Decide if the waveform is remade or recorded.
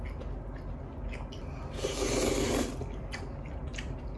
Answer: recorded